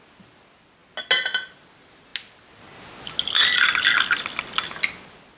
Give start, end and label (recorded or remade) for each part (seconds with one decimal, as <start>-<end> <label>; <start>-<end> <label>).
0.0-5.4 recorded